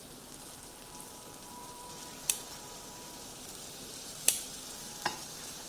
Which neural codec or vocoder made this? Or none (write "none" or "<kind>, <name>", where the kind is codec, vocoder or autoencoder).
vocoder, BigVGAN v2